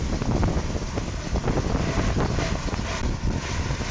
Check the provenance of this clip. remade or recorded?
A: recorded